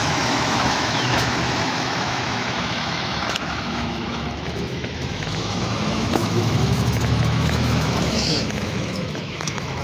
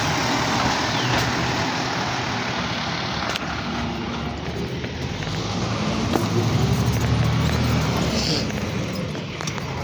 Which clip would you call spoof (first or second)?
first